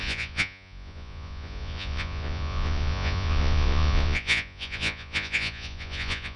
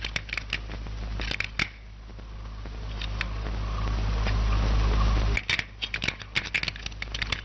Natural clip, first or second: second